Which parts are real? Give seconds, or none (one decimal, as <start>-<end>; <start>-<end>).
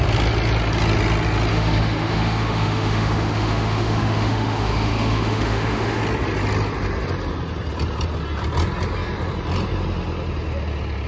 0.0-1.5; 6.0-11.1